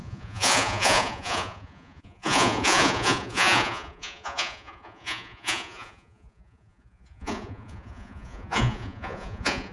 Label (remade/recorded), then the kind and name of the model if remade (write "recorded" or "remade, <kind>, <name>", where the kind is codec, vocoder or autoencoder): remade, vocoder, Vocos